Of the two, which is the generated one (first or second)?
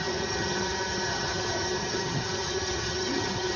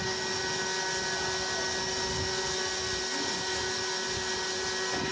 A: first